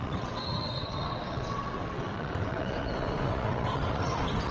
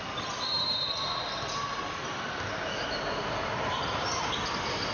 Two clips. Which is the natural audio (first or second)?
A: second